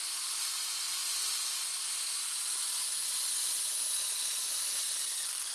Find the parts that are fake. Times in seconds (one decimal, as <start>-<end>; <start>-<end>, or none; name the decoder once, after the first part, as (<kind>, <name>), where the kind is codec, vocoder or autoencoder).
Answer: none